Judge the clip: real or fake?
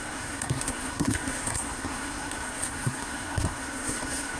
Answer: fake